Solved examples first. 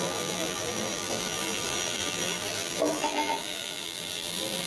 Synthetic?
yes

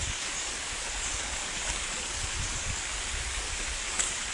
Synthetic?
yes